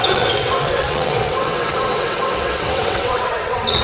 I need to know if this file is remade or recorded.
remade